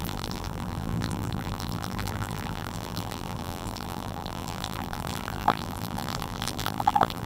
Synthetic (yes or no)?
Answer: yes